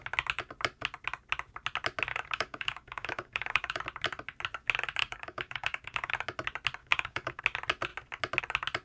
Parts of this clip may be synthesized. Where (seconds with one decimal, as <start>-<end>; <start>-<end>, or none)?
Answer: 2.1-3.8; 5.0-6.1; 6.8-7.4